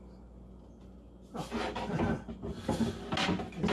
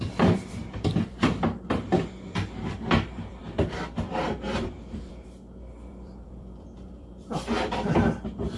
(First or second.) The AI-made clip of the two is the second